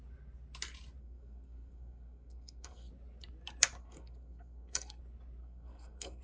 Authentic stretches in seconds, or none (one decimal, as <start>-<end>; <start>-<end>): 0.0-1.0; 2.9-3.8; 5.0-5.4